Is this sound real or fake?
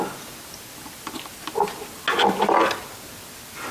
real